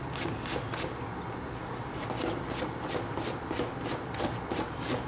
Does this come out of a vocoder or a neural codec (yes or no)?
no